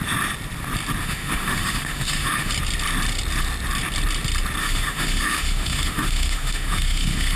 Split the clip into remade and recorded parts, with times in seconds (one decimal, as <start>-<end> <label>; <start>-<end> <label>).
0.0-1.0 recorded; 1.0-2.5 remade; 2.5-4.6 recorded; 4.6-7.4 remade

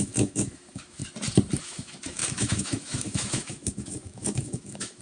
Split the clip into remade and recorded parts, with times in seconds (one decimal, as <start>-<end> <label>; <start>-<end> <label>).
0.0-1.0 remade; 1.0-1.6 recorded; 1.6-5.0 remade

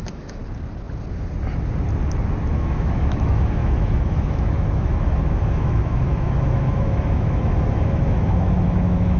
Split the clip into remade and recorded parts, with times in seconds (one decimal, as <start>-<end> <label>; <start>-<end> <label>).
0.0-0.4 remade; 0.4-2.5 recorded; 2.5-9.2 remade

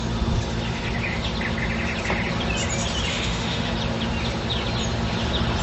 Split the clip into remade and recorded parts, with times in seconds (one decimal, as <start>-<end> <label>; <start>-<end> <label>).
0.0-3.1 recorded; 3.1-3.7 remade; 3.7-5.6 recorded

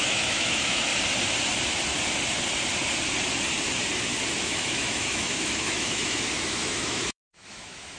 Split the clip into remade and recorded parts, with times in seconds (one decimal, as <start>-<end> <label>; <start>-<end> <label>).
0.0-0.9 remade; 0.9-4.4 recorded; 4.4-8.0 remade

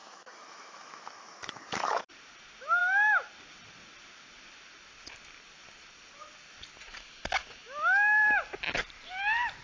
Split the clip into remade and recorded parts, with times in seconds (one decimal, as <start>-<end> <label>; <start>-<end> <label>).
0.0-2.1 remade; 2.1-9.6 recorded